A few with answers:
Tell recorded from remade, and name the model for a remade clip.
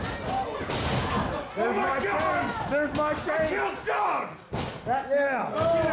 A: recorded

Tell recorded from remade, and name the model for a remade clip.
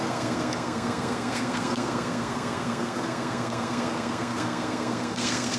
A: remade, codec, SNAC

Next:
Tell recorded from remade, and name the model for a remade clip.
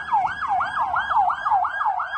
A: recorded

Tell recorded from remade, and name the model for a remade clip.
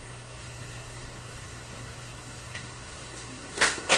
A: remade, codec, SNAC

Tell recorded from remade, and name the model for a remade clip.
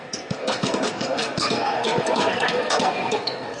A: remade, codec, SNAC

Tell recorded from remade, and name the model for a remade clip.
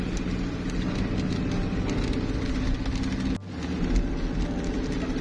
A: recorded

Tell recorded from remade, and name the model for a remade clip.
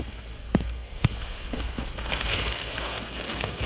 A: remade, codec, SNAC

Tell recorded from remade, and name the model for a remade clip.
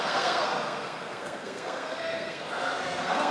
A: remade, codec, SNAC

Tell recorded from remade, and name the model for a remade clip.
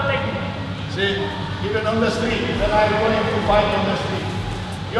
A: recorded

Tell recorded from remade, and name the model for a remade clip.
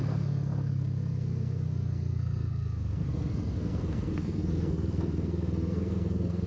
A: remade, codec, SNAC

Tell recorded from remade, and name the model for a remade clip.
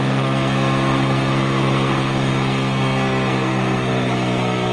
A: remade, codec, SNAC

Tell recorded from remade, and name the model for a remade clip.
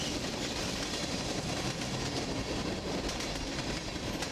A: recorded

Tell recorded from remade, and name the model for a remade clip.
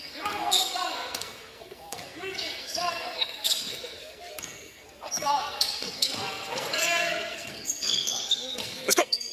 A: remade, codec, SNAC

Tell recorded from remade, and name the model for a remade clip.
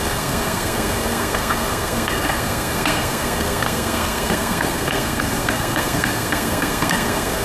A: remade, codec, SNAC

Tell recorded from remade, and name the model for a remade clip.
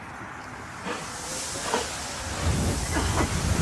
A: recorded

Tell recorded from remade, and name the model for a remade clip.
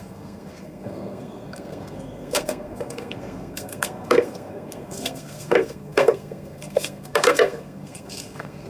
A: remade, codec, SNAC